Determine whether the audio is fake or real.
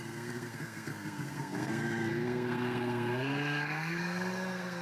fake